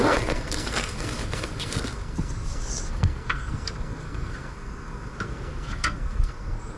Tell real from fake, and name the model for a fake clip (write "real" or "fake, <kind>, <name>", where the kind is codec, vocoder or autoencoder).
fake, codec, SNAC